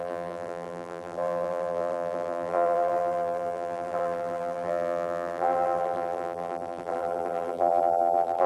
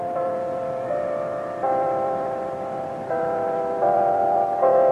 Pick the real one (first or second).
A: second